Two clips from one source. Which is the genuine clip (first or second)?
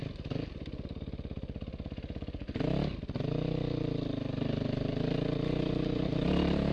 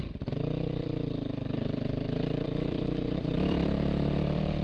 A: first